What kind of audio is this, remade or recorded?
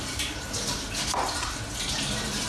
recorded